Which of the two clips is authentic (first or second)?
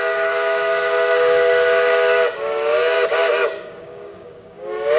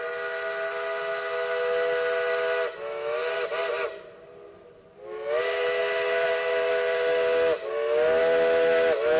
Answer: second